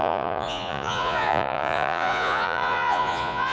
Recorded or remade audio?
remade